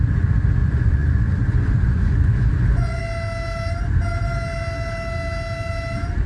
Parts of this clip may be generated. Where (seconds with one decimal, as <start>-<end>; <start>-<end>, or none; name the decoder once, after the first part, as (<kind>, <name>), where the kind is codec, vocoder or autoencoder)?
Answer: 0.6-3.0 (vocoder, Vocos)